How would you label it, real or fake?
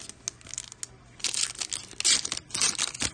real